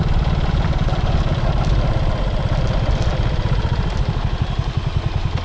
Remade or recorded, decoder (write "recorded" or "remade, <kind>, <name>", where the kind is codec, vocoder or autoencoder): recorded